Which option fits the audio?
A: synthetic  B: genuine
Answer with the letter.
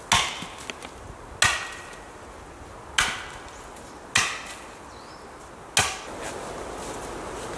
B